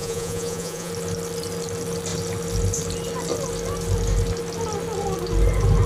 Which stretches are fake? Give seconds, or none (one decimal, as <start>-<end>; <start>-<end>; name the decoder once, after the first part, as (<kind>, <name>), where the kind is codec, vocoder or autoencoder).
0.0-0.9 (vocoder, Vocos)